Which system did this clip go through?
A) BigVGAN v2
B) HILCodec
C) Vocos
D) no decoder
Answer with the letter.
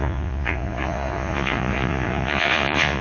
C